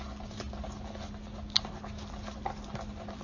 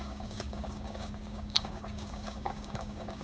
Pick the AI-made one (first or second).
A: second